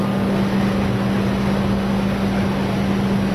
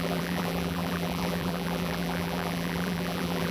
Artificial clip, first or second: second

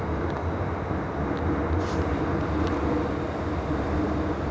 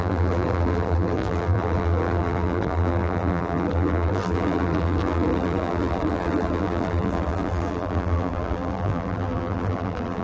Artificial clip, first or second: second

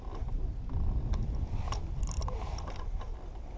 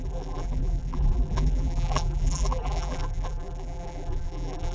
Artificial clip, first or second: second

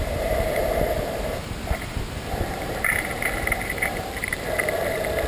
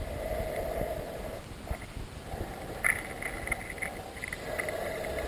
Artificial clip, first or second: first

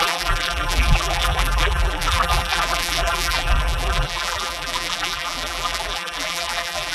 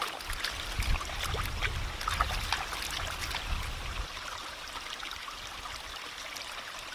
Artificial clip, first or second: first